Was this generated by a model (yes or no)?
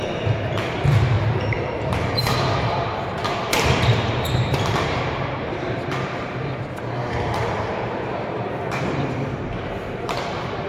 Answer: yes